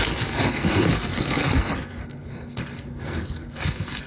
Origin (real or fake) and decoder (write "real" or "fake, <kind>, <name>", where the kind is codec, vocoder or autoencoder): fake, codec, SNAC